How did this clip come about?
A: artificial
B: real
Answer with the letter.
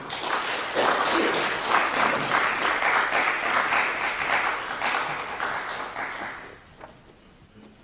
B